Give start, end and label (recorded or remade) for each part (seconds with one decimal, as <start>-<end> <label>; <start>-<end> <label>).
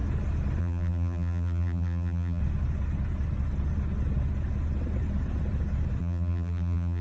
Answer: 0.0-0.6 recorded; 0.6-2.4 remade; 2.4-6.0 recorded; 6.0-7.0 remade